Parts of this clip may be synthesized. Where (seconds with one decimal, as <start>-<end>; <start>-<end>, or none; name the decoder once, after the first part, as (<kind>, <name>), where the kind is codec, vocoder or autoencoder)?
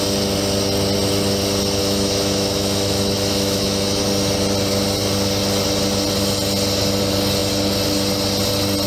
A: 1.8-4.0 (autoencoder, DAC-VAE)